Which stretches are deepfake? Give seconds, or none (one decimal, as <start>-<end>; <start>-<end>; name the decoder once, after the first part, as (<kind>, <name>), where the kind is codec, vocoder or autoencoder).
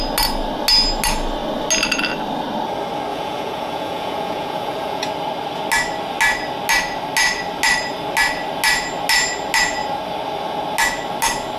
3.1-5.1 (vocoder, Vocos)